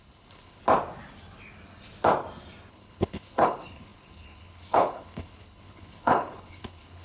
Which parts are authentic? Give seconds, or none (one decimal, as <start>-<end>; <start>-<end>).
0.6-2.7